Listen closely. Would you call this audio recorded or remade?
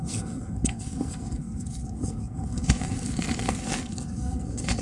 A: remade